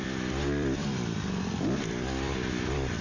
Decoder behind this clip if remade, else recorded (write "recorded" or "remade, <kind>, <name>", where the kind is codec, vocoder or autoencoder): remade, vocoder, BigVGAN v2